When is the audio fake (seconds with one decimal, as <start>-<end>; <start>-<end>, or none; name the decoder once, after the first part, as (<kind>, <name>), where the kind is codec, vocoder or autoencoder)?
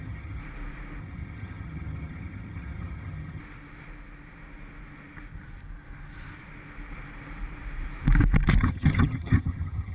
0.0-0.4 (vocoder, HiFi-GAN); 1.0-3.4; 8.6-9.9